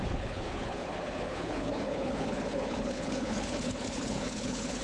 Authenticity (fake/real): fake